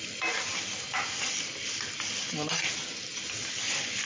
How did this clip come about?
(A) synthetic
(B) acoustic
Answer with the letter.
B